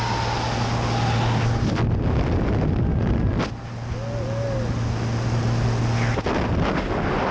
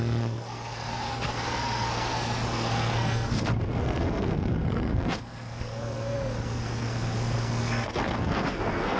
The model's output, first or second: second